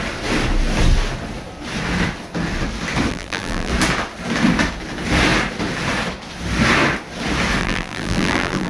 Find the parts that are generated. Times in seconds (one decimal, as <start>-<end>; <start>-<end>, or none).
3.1-3.7; 7.6-8.7